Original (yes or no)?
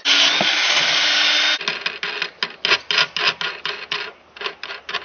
yes